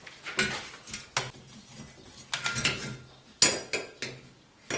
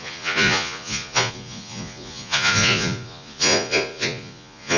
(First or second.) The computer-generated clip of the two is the second